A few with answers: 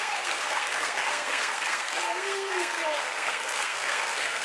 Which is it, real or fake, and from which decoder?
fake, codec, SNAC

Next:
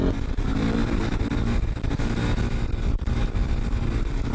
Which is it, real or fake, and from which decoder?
real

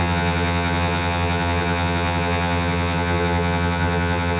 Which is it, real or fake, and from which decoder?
fake, vocoder, HiFi-GAN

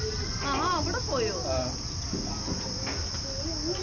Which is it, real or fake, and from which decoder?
real